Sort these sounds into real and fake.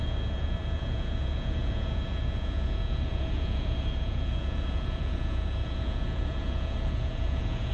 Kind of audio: fake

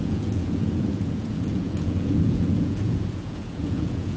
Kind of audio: fake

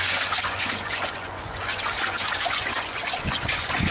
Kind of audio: fake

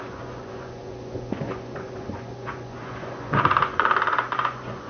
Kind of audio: fake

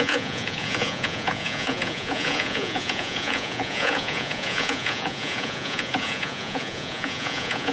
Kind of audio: fake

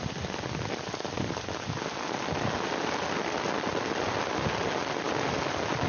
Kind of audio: real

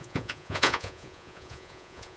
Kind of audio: fake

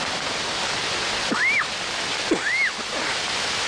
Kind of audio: real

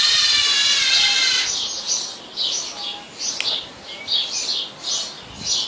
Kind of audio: real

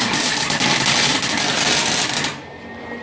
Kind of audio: real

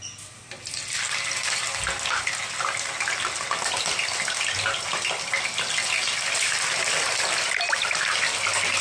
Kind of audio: real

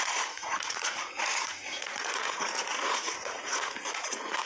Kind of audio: fake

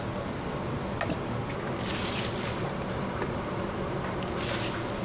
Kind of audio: real